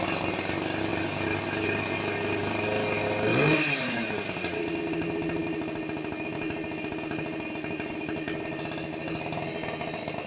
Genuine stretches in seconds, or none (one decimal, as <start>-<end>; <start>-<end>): 0.0-3.3; 4.6-10.3